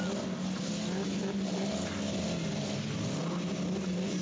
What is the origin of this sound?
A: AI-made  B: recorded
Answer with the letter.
B